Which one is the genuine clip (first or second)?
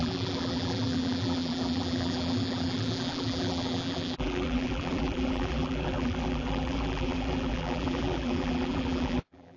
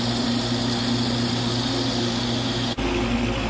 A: second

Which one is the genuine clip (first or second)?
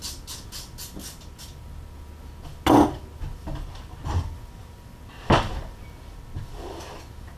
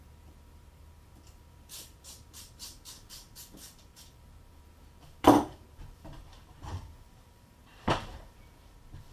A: first